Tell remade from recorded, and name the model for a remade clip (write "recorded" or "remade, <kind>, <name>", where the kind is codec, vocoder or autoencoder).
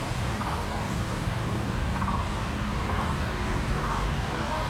remade, codec, DAC